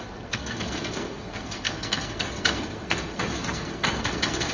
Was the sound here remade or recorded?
remade